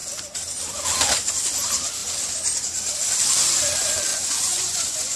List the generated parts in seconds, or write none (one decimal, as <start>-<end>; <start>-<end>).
4.1-5.2